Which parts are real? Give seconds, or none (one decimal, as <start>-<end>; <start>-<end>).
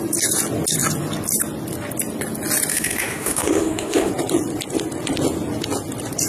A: 0.0-2.7; 4.1-6.3